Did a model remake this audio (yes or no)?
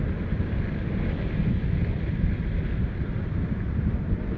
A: no